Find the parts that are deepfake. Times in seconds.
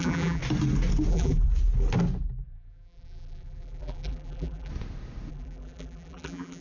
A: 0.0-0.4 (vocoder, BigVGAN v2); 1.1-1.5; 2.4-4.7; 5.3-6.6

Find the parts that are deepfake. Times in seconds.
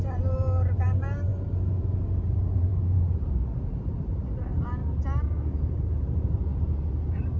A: 0.0-4.8 (vocoder, BigVGAN v2); 5.7-7.4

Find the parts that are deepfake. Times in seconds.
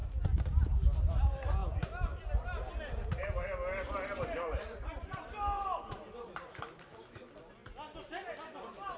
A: none